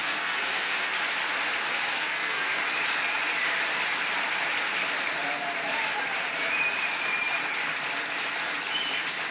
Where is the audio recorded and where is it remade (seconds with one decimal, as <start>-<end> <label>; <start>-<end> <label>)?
0.0-0.9 remade; 0.9-1.7 recorded; 1.7-2.6 remade; 2.6-9.3 recorded